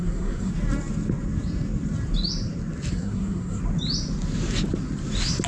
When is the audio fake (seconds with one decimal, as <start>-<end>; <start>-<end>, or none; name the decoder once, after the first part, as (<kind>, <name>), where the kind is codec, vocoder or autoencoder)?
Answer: 0.0-0.5 (codec, SNAC); 2.9-3.6